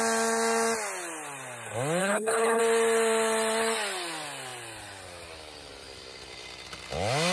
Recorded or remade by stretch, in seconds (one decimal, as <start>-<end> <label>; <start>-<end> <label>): 0.0-2.0 recorded; 2.0-2.6 remade; 2.6-7.3 recorded